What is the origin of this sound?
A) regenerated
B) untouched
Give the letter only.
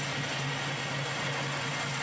B